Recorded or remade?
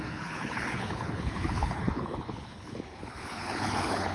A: remade